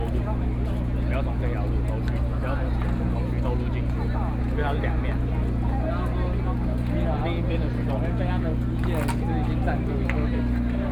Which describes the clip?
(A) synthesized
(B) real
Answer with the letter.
B